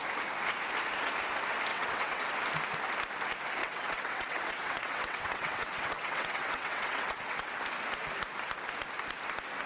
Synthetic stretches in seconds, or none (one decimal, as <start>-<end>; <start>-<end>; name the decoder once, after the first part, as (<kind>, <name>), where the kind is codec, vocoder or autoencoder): 1.7-2.3 (vocoder, WaveNeXt); 3.6-7.5